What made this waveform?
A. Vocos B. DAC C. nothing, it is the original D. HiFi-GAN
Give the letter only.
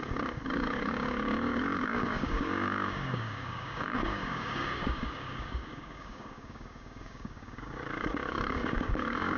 B